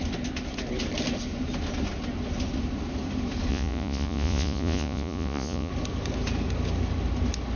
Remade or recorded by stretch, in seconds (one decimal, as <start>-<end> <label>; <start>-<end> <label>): 0.0-3.5 recorded; 3.5-5.7 remade; 5.7-7.6 recorded